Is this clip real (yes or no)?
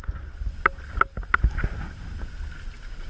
yes